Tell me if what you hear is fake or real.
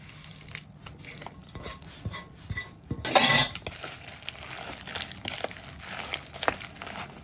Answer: real